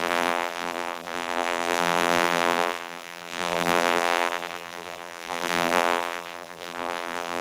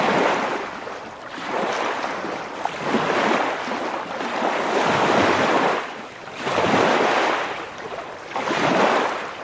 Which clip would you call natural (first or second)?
second